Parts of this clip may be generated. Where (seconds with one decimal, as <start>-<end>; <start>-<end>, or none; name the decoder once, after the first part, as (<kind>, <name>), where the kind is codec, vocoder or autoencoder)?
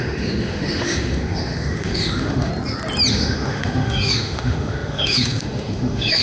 0.0-2.5 (autoencoder, DAC-VAE); 3.1-6.2